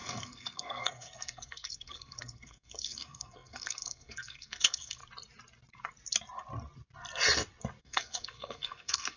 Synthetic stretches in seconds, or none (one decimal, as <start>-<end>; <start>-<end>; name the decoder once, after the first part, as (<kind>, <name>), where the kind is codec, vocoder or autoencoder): 0.0-5.0 (codec, SNAC); 7.8-9.2